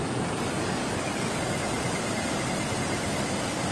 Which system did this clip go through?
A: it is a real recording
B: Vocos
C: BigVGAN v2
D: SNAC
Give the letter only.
A